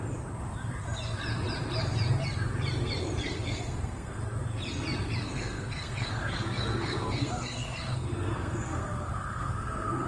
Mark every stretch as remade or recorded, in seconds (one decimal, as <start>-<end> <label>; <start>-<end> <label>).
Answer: 0.0-3.2 recorded; 3.2-4.2 remade; 4.2-5.2 recorded; 5.2-10.1 remade